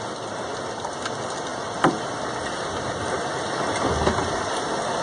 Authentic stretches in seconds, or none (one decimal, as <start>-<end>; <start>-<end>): 0.0-5.0